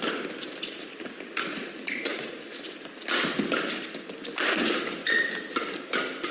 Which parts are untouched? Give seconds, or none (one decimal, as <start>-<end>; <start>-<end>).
0.0-1.5; 2.6-6.3